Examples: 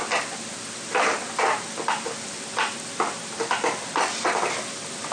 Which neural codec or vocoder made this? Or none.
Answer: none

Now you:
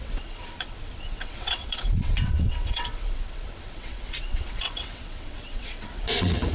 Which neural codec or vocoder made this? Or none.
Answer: vocoder, WaveNeXt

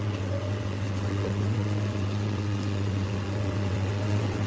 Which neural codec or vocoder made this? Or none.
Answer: vocoder, WaveNeXt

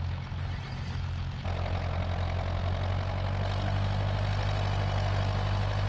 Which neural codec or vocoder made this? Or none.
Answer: none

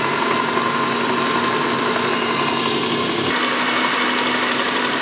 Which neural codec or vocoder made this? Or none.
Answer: none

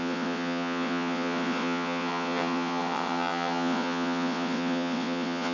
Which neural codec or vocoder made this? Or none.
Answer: vocoder, WaveNeXt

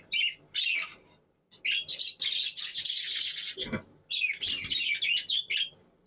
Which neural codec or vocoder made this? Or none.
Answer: none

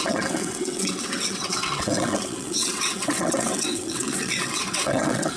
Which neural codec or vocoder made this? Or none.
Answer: vocoder, WaveNeXt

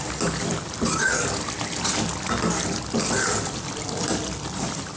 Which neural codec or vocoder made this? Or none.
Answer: none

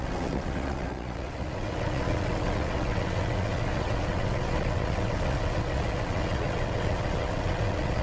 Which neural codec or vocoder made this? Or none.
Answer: vocoder, WaveNeXt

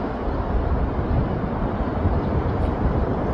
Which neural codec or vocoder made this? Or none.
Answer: none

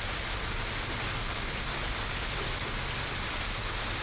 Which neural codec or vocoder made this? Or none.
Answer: none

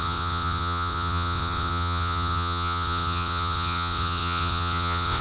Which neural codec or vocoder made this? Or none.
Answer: vocoder, WaveNeXt